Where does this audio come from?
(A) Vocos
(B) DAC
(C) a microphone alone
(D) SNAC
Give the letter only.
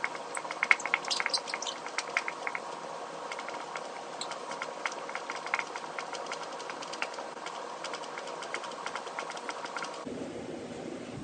C